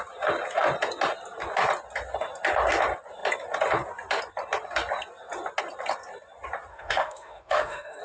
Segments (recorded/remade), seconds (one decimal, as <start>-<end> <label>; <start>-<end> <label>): 0.0-6.7 recorded; 6.7-8.0 remade

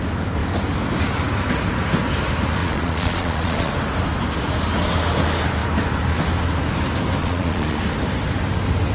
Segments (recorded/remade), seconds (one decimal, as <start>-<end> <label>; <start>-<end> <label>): 0.0-2.6 recorded; 2.6-3.7 remade; 3.7-7.2 recorded; 7.2-7.8 remade; 7.8-8.9 recorded

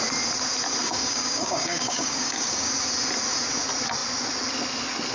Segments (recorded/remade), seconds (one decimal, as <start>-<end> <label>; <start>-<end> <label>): 0.0-0.8 recorded; 0.8-2.7 remade; 2.7-5.1 recorded

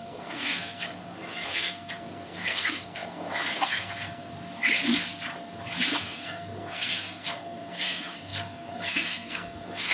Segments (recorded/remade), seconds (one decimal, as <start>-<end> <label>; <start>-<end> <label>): 0.0-4.3 remade; 4.3-6.0 recorded; 6.0-9.9 remade

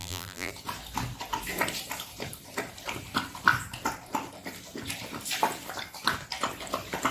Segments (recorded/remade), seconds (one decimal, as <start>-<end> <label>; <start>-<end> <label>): 0.0-0.5 remade; 0.5-7.1 recorded

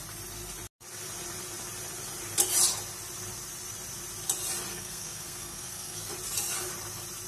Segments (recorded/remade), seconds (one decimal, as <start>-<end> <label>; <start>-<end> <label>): 0.0-4.7 recorded; 4.7-6.1 remade; 6.1-7.3 recorded